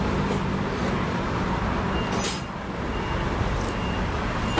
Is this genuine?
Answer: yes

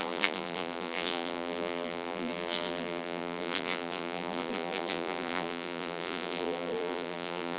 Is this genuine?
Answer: no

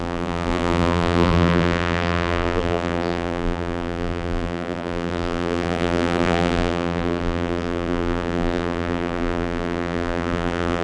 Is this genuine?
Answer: no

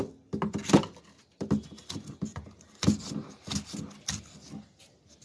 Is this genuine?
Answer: yes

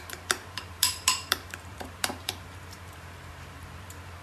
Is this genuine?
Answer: no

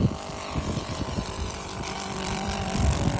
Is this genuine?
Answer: no